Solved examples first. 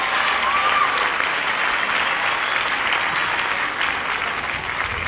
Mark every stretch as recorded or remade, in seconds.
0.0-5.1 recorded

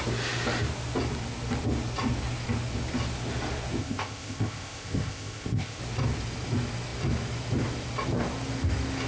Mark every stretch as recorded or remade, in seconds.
0.0-3.8 recorded; 3.8-5.8 remade; 5.8-9.1 recorded